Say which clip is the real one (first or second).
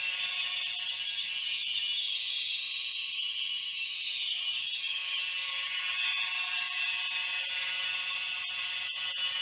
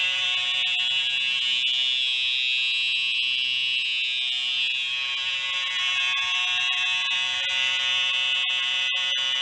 second